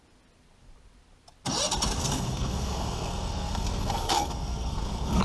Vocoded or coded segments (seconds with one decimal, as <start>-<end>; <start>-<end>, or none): 2.0-5.2